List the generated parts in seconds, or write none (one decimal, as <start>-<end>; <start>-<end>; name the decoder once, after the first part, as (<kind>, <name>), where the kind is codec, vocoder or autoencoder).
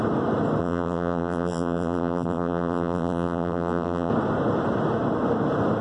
0.6-4.1 (vocoder, BigVGAN v2)